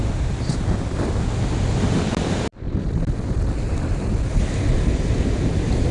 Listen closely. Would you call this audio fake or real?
real